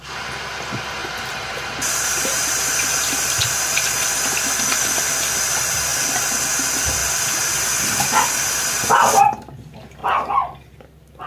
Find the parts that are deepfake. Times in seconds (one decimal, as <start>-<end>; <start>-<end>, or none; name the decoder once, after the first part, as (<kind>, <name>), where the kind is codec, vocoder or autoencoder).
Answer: 1.0-2.8 (vocoder, BigVGAN v2)